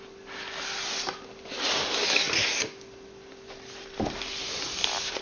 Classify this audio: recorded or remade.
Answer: recorded